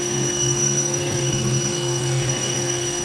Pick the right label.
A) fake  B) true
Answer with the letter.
A